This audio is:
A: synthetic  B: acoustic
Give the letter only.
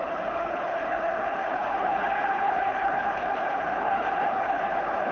A